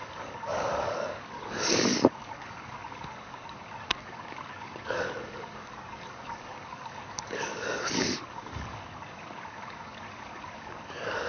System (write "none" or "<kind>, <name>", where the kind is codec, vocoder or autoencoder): codec, DAC